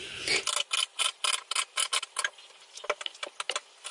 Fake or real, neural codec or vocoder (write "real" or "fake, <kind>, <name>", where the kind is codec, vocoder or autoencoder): real